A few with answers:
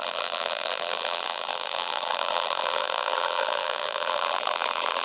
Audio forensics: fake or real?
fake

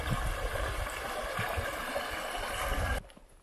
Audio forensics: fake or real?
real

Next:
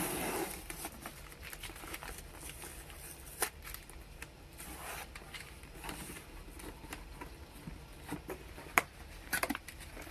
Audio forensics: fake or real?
fake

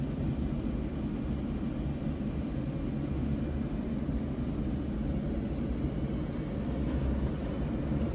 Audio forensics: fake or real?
real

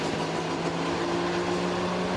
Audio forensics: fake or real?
real